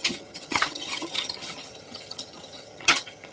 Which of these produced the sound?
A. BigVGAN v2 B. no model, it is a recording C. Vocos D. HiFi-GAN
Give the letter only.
D